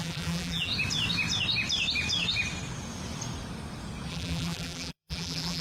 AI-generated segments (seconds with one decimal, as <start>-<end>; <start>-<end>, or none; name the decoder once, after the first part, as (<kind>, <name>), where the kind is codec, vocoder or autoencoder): 0.0-0.7 (vocoder, BigVGAN v2); 4.1-5.6